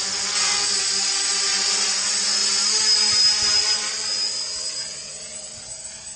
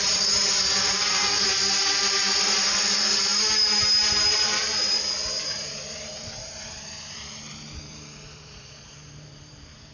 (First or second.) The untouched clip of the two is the first